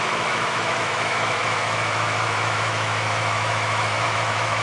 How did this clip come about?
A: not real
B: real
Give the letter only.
A